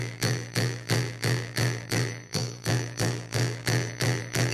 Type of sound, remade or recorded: remade